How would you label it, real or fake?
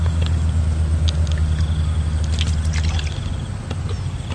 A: real